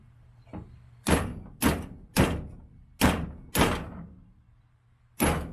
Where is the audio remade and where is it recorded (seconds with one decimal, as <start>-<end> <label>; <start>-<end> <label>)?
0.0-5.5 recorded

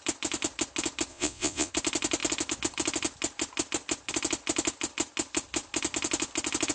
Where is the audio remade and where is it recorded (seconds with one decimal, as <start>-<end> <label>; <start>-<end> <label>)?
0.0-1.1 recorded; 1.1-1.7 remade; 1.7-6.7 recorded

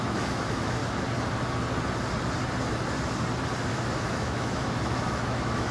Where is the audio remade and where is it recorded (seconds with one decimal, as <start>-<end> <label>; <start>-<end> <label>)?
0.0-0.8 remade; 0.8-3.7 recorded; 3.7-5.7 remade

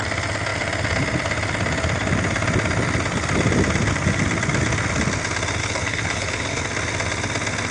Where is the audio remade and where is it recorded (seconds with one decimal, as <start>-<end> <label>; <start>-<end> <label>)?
0.0-5.6 recorded; 5.6-6.6 remade; 6.6-7.7 recorded